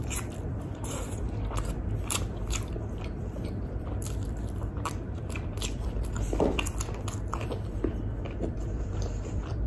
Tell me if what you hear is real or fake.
fake